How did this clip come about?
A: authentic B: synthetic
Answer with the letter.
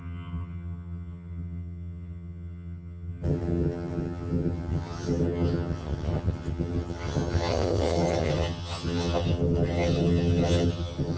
B